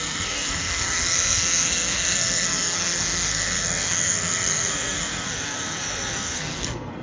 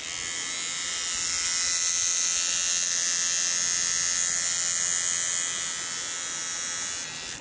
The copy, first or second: first